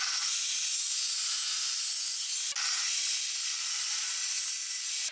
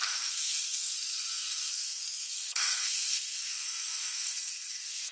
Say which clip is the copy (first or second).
second